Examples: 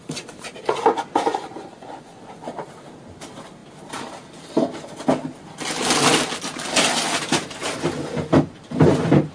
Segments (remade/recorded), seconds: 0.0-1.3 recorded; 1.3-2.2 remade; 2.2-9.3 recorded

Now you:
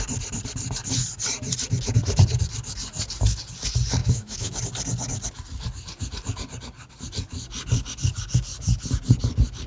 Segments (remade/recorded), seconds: 0.0-4.0 recorded; 4.0-4.6 remade; 4.6-9.7 recorded

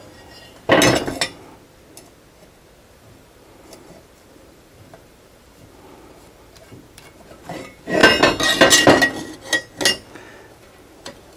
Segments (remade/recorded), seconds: 0.0-0.7 remade; 0.7-2.9 recorded; 2.9-8.0 remade; 8.0-10.5 recorded; 10.5-11.4 remade

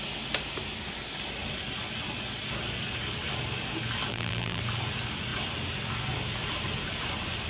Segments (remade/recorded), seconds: 0.0-4.1 recorded; 4.1-4.6 remade; 4.6-7.5 recorded

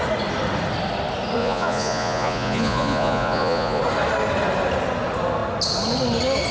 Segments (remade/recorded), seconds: 0.0-1.4 recorded; 1.4-3.8 remade; 3.8-6.5 recorded